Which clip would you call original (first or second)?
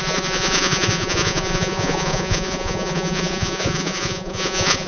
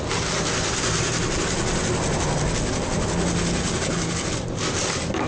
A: second